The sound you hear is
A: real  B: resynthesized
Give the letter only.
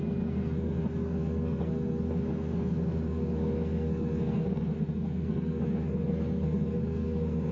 B